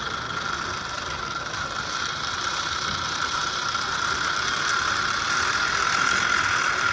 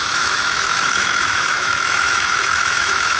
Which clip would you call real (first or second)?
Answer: first